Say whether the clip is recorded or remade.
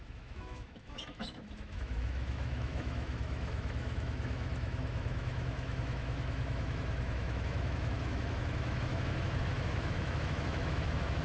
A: remade